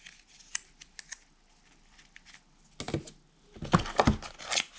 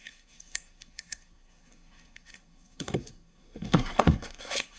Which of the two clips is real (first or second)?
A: first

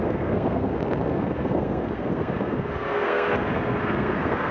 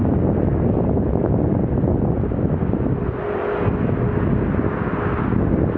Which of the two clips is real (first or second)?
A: second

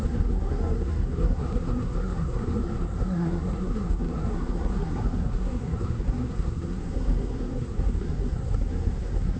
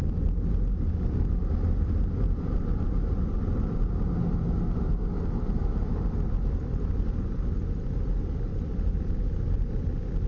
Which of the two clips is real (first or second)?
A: second